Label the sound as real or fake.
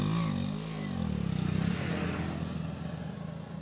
real